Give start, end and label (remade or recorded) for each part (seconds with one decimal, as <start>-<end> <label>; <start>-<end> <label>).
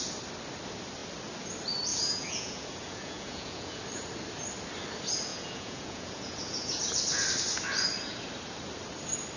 0.0-1.9 recorded; 1.9-3.8 remade; 3.8-5.3 recorded; 5.3-6.8 remade; 6.8-9.4 recorded